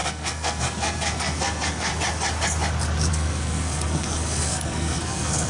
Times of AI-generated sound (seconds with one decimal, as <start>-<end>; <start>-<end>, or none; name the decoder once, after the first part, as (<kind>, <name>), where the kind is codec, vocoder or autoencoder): 0.0-1.9 (codec, SNAC); 3.1-5.5